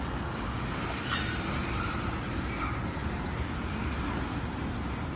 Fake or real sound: real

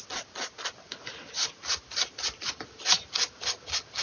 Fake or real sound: real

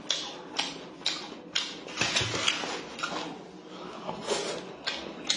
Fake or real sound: real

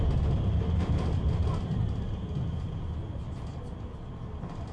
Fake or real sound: real